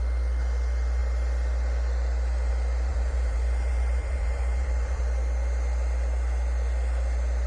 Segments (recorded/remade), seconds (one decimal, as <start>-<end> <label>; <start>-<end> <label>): 0.0-2.9 recorded; 2.9-5.0 remade; 5.0-7.5 recorded